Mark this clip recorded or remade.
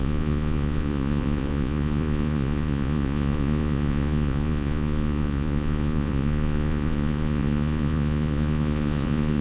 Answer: remade